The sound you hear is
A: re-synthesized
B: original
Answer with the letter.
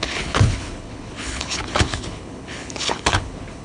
A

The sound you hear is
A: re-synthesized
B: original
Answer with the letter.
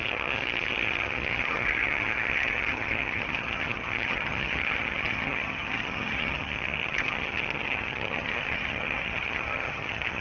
A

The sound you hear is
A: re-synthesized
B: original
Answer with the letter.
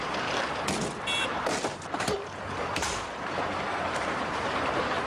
A